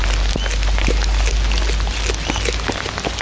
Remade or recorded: recorded